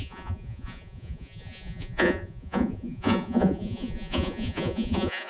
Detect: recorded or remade remade